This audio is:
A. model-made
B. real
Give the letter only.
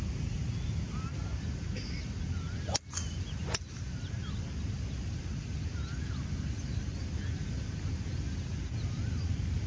B